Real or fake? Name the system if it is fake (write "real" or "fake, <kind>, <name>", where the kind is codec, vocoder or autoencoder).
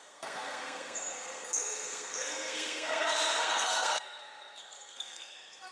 fake, codec, SNAC